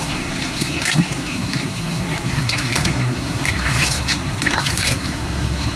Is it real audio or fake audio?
fake